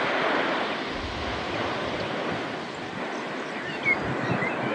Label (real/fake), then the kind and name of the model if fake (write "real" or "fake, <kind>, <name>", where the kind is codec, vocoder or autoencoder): real